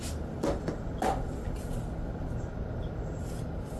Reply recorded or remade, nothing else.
recorded